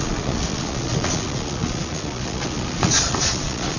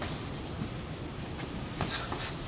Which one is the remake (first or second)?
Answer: first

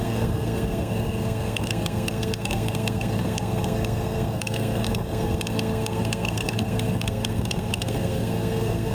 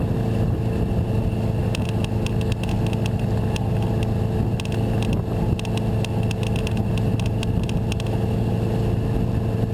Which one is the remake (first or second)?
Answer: first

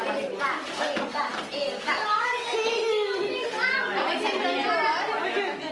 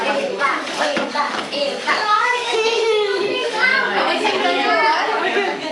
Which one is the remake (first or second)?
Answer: second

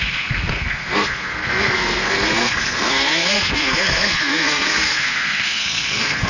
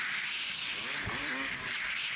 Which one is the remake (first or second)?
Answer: first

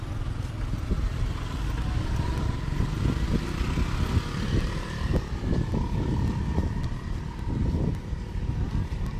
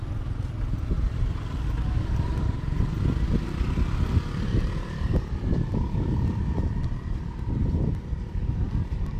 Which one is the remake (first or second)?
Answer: second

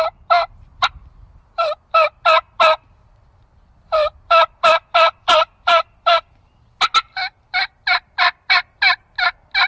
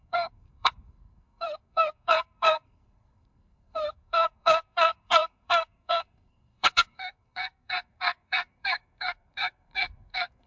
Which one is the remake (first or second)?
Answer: second